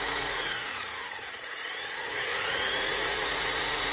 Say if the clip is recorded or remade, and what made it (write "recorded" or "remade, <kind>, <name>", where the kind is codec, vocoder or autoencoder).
remade, vocoder, Vocos